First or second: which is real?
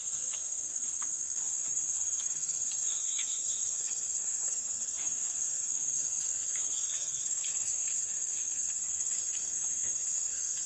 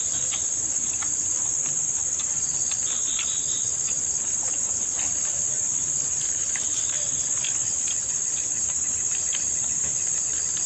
second